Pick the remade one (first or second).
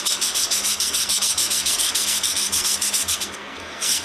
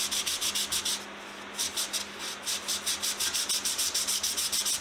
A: first